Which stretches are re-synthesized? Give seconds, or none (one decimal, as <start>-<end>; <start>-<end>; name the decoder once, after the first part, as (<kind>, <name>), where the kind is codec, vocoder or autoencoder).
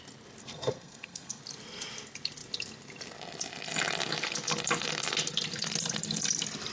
0.4-1.4 (codec, SNAC)